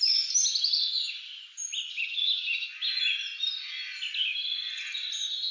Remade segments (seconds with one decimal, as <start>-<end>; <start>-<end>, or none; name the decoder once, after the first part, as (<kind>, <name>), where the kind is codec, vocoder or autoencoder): none

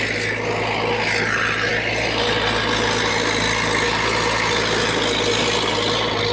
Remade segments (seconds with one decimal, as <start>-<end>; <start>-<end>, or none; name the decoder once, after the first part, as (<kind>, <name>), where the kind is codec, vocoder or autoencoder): none

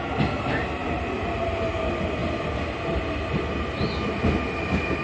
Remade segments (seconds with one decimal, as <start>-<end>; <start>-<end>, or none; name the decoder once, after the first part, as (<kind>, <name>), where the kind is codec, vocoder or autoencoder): none

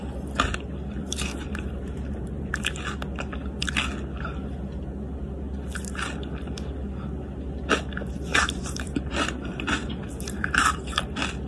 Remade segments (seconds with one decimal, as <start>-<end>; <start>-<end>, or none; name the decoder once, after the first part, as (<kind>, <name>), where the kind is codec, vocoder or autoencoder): 1.0-2.5 (vocoder, BigVGAN v2); 8.3-11.1

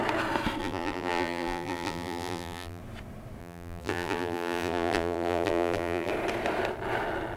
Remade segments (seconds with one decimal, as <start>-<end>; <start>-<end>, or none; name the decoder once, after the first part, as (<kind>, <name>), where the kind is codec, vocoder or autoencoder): 0.6-2.8 (vocoder, BigVGAN v2); 3.4-6.1

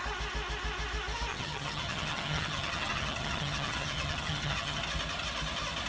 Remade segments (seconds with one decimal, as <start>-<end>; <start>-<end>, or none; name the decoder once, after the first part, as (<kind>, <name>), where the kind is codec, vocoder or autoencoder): 1.3-4.8 (vocoder, HiFi-GAN)

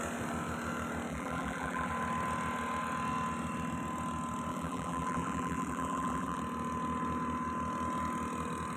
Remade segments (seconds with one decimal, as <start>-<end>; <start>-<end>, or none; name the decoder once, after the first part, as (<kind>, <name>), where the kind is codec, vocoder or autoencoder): 1.1-1.9 (vocoder, BigVGAN v2); 4.5-6.4